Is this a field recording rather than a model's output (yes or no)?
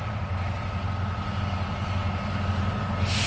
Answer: yes